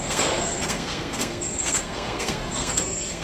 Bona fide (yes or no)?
no